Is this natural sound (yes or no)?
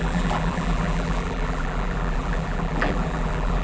no